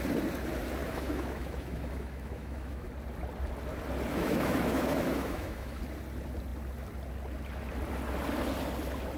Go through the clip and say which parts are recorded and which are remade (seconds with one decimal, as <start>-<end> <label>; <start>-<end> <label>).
0.0-0.8 recorded; 0.8-2.9 remade; 2.9-4.1 recorded; 4.1-5.8 remade; 5.8-9.2 recorded